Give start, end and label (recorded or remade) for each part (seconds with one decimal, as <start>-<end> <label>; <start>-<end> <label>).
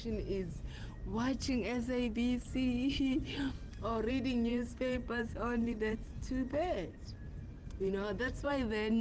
0.0-4.5 recorded; 4.5-8.5 remade; 8.5-9.0 recorded